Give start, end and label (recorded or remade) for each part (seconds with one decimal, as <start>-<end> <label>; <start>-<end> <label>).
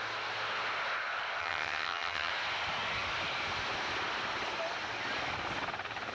0.0-1.4 recorded; 1.4-2.3 remade; 2.3-6.1 recorded